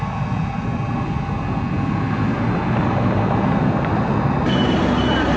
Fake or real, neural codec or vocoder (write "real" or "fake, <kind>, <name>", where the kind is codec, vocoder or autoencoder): real